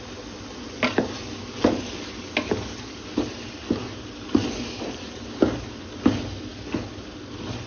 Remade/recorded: recorded